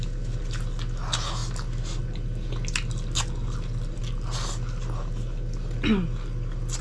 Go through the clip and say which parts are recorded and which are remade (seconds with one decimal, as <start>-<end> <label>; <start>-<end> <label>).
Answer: 0.0-6.8 recorded